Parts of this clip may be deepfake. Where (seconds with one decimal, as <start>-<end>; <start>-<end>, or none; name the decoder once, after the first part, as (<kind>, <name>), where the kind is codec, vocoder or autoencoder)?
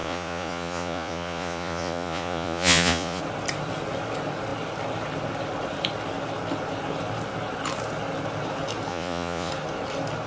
0.0-3.2 (vocoder, Vocos); 8.9-9.5